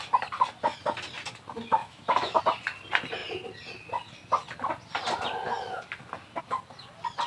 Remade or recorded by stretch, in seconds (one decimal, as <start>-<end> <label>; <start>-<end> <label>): 0.0-1.8 recorded; 1.8-2.4 remade; 2.4-7.3 recorded